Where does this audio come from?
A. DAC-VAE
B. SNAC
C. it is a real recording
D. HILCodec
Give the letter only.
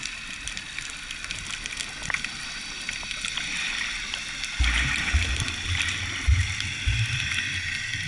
C